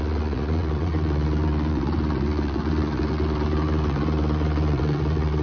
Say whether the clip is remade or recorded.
remade